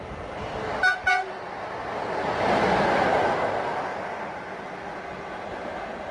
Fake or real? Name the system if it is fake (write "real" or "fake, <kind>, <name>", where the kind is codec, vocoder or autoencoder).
real